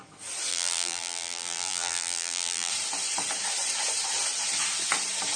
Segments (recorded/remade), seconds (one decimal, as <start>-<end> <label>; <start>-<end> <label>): 0.0-0.5 recorded; 0.5-2.7 remade; 2.7-5.4 recorded